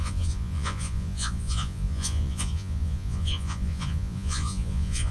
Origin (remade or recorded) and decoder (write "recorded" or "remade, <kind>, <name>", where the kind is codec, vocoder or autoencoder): remade, vocoder, Vocos